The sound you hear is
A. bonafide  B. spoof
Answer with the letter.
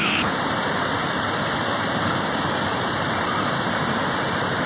A